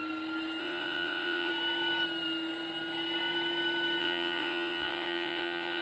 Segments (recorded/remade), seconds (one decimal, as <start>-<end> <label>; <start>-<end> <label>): 0.0-0.6 recorded; 0.6-1.5 remade; 1.5-4.0 recorded; 4.0-5.8 remade